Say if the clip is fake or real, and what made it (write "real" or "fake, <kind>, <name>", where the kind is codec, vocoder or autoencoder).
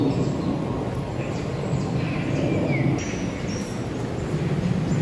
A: real